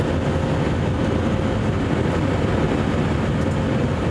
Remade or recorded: recorded